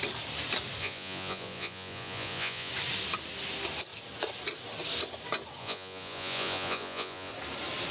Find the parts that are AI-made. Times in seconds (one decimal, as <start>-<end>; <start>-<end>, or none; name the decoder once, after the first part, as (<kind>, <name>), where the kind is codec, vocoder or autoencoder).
0.8-2.7 (vocoder, Vocos); 5.6-7.3